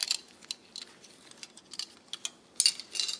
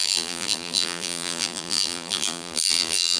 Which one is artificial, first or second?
second